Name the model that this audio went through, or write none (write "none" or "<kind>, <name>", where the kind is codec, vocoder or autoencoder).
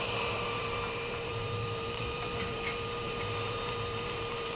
vocoder, BigVGAN v2